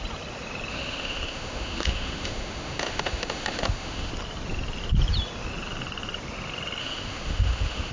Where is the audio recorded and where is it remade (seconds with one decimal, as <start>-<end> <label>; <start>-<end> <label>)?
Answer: 0.0-0.7 recorded; 0.7-4.1 remade; 4.1-6.8 recorded; 6.8-7.9 remade